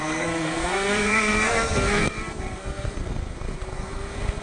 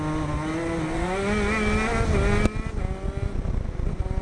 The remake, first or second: first